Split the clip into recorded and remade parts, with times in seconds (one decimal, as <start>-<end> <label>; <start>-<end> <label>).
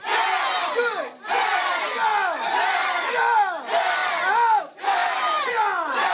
0.0-6.1 recorded